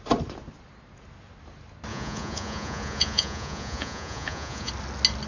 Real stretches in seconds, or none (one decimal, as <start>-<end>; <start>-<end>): 0.0-1.9; 4.7-5.3